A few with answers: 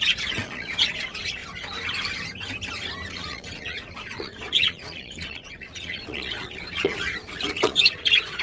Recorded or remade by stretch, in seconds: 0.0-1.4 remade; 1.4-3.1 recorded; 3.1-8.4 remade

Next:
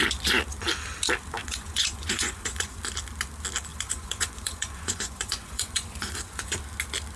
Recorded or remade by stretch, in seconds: 0.0-1.4 recorded; 1.4-2.8 remade; 2.8-3.7 recorded; 3.7-6.6 remade; 6.6-7.2 recorded

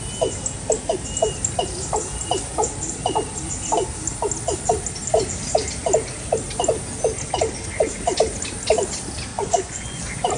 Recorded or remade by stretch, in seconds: 0.0-9.3 recorded; 9.3-10.0 remade; 10.0-10.4 recorded

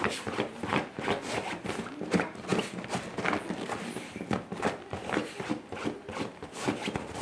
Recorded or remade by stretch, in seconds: 0.0-7.2 recorded

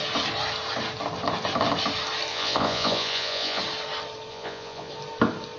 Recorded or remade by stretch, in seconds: 0.0-2.3 recorded; 2.3-3.6 remade; 3.6-4.3 recorded; 4.3-4.9 remade; 4.9-5.6 recorded

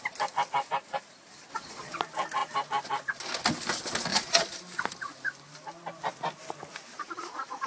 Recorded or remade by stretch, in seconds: 0.0-1.5 recorded; 1.5-2.0 remade; 2.0-4.1 recorded; 4.1-4.6 remade; 4.6-6.9 recorded; 6.9-7.7 remade

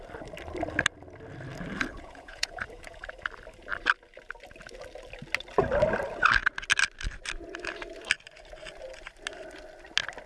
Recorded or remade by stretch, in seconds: 0.0-1.9 recorded; 1.9-3.1 remade; 3.1-10.3 recorded